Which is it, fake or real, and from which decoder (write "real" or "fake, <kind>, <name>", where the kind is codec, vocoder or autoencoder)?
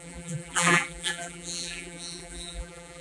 fake, vocoder, BigVGAN v2